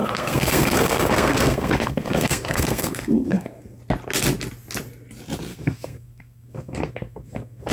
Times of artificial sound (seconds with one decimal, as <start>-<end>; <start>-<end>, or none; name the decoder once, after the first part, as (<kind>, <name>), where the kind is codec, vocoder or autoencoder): 0.0-3.8 (codec, SNAC); 5.5-7.7